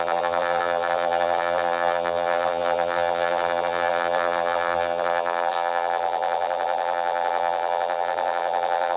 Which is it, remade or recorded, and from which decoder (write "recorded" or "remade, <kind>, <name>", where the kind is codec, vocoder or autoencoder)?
remade, vocoder, BigVGAN v2